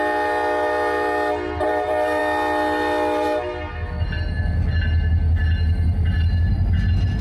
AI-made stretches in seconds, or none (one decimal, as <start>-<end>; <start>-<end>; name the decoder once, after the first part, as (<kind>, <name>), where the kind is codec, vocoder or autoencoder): none